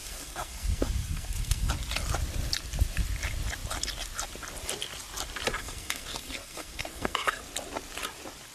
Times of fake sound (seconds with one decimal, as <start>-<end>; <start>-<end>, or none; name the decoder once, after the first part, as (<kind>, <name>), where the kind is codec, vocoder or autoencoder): 0.0-1.7 (codec, SNAC); 5.6-7.4